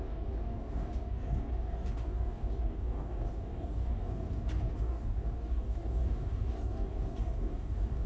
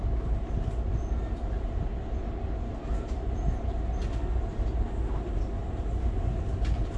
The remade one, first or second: first